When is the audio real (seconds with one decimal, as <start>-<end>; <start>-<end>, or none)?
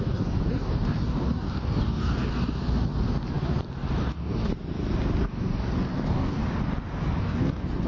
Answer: 2.3-4.0; 4.5-5.2; 6.4-7.2